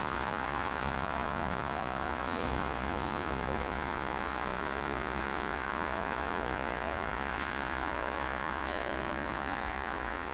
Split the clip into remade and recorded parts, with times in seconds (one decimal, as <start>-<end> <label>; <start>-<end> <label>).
0.0-10.3 remade